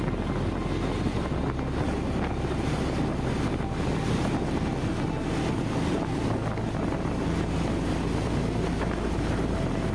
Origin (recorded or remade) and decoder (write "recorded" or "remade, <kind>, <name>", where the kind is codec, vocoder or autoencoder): recorded